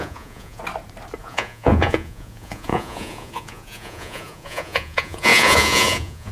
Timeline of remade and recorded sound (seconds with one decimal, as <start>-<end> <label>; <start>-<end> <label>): 0.0-0.6 remade; 0.6-1.2 recorded; 1.2-6.3 remade